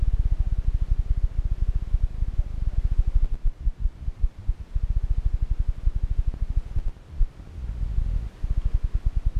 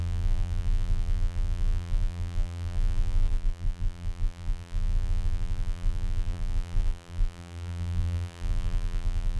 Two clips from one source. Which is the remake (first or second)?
second